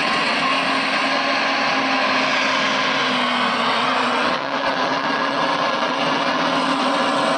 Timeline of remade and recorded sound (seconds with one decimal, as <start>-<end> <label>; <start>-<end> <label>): 0.0-0.5 remade; 0.5-3.5 recorded; 3.5-7.4 remade